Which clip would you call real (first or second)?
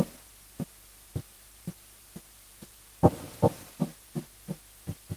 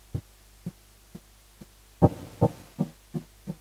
second